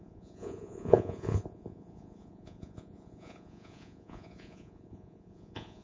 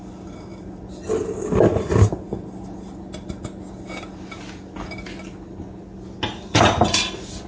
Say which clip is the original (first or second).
second